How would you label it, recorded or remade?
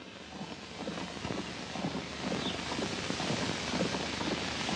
recorded